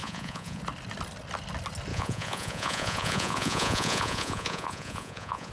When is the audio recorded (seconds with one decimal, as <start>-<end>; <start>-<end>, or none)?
0.6-1.9